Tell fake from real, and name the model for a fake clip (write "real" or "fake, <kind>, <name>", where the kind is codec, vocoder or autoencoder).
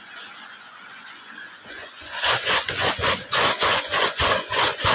fake, vocoder, Vocos